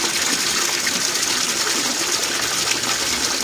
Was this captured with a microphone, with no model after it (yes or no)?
yes